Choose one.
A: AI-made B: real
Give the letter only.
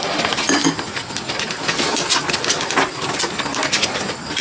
B